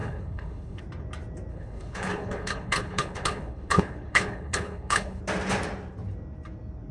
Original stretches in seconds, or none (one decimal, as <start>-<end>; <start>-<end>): 0.8-1.5; 5.2-6.9